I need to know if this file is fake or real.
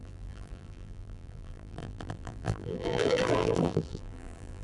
fake